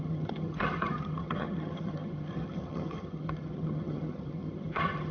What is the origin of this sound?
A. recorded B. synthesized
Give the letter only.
B